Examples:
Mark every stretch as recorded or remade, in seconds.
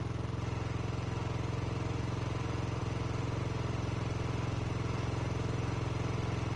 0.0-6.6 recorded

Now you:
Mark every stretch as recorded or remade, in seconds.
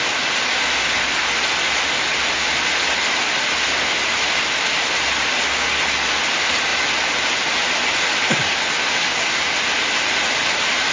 0.0-10.9 recorded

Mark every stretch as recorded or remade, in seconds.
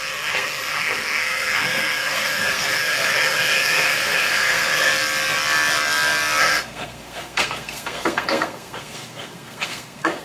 0.0-4.9 remade; 4.9-6.4 recorded; 6.4-10.2 remade